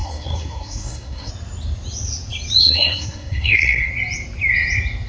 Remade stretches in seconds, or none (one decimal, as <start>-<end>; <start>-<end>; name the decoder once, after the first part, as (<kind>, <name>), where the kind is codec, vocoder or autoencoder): 0.0-1.3 (codec, SNAC); 2.6-3.9